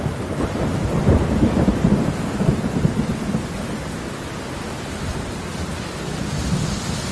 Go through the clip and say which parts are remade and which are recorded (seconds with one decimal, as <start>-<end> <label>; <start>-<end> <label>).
0.0-7.1 recorded

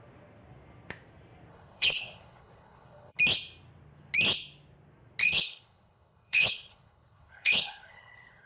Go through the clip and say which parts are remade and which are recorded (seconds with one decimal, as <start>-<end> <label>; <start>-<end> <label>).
0.0-1.5 recorded; 1.5-3.2 remade; 3.2-5.2 recorded; 5.2-8.5 remade

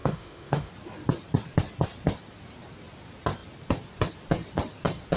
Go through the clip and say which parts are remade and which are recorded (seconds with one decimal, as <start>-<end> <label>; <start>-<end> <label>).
0.0-0.7 remade; 0.7-5.2 recorded

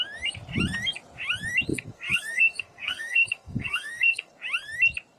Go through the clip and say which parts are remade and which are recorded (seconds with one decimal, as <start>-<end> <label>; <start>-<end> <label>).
0.0-1.7 recorded; 1.7-4.3 remade; 4.3-5.2 recorded

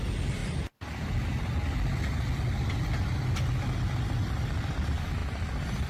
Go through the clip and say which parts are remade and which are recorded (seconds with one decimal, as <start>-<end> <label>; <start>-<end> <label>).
0.0-5.9 recorded